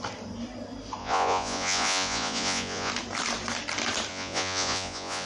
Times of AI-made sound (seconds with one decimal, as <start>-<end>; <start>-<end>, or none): 1.0-2.9; 4.1-5.3